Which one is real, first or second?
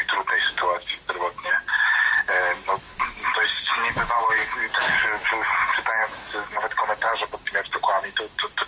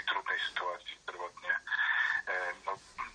second